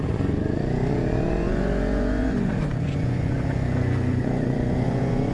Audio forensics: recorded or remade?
remade